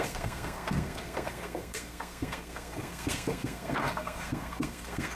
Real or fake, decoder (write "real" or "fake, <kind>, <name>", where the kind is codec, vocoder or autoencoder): fake, codec, SNAC